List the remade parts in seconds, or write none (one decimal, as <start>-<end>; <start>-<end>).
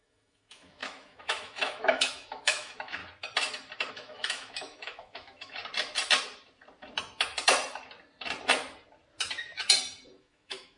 0.0-3.0; 3.9-5.6; 10.2-10.8